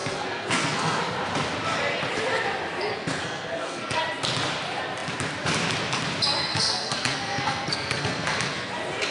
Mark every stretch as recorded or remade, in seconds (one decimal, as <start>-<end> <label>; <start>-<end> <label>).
0.0-1.0 remade; 1.0-2.9 recorded; 2.9-4.0 remade; 4.0-6.5 recorded; 6.5-8.7 remade; 8.7-9.1 recorded